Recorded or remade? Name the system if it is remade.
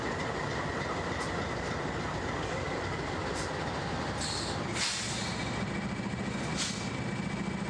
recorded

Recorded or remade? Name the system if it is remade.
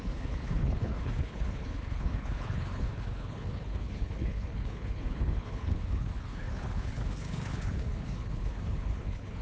remade, codec, HILCodec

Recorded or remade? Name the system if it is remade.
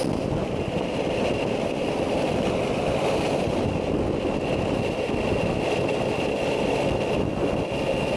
recorded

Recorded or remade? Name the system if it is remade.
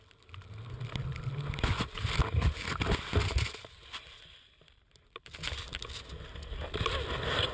recorded